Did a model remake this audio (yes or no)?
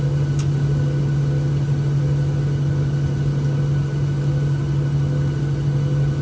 no